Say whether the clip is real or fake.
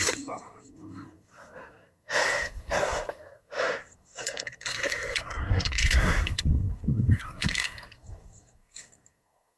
fake